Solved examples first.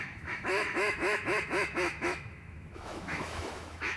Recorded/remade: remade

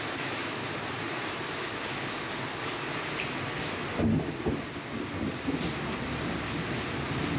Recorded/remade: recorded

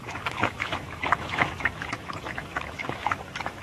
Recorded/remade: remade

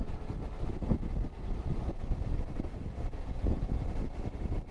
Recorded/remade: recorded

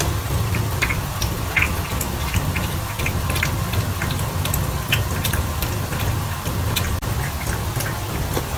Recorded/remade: recorded